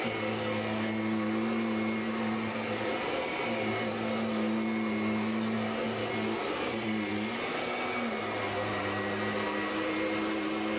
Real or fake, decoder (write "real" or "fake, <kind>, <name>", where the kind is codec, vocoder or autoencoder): real